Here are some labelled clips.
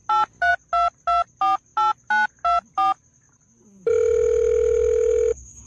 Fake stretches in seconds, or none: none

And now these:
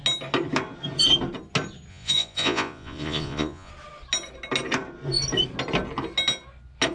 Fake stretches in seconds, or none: 1.9-3.7 (vocoder, Vocos)

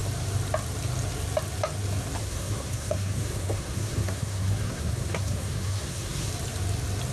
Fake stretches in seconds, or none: 2.2-6.3 (codec, SNAC)

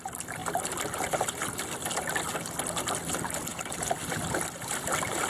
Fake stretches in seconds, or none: 0.4-1.6 (vocoder, BigVGAN v2); 3.5-4.3

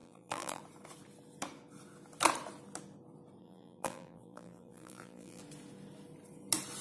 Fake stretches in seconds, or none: 0.0-0.6 (vocoder, BigVGAN v2); 3.4-5.4

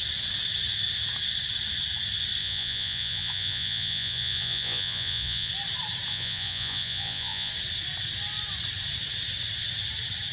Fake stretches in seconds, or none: 2.4-5.5 (vocoder, Vocos); 6.1-7.5